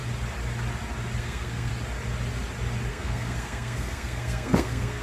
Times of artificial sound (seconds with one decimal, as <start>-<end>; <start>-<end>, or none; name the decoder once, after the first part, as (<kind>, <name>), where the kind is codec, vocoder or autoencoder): 1.2-1.7 (codec, SNAC); 2.9-5.0